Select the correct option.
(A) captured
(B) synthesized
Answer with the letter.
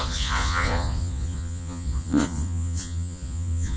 B